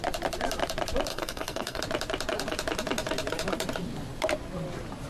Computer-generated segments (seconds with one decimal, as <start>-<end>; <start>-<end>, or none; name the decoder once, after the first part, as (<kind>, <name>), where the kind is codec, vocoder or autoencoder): 1.1-1.8 (codec, SNAC)